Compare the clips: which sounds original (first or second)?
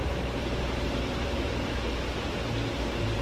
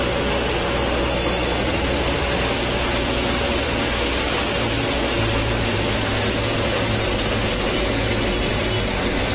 second